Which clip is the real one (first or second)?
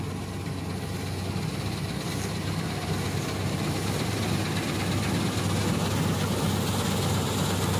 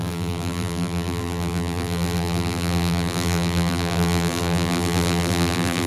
first